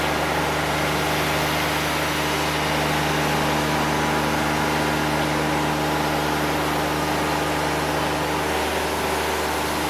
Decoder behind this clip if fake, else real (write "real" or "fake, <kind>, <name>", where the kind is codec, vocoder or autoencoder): real